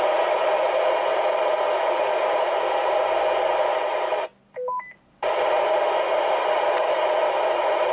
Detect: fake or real real